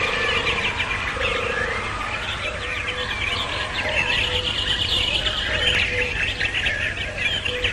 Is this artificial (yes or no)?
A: no